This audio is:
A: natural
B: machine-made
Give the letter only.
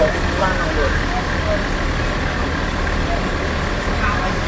A